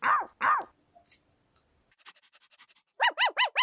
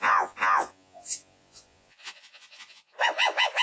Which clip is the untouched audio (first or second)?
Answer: first